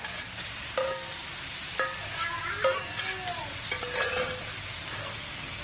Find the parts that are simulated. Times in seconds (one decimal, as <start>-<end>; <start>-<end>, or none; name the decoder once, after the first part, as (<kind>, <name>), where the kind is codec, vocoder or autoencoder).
5.0-5.6 (codec, SNAC)